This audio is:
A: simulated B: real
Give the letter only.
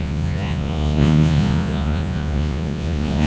A